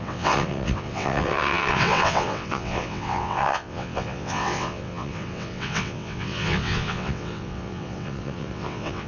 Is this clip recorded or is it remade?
remade